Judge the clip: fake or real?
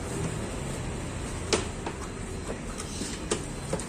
real